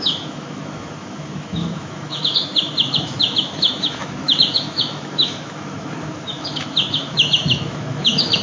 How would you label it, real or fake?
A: fake